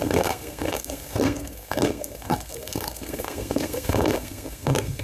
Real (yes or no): no